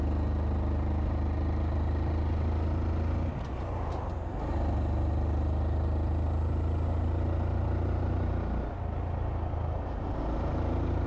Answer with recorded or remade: recorded